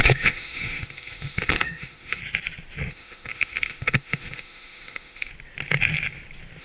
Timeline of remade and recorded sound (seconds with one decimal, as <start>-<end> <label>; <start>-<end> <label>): 0.0-2.2 remade; 2.2-2.9 recorded; 2.9-5.3 remade; 5.3-6.6 recorded